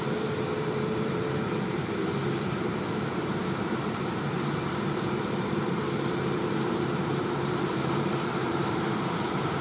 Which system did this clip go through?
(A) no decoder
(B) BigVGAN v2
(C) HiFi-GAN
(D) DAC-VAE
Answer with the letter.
B